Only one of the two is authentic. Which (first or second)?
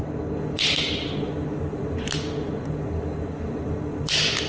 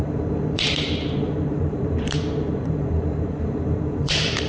first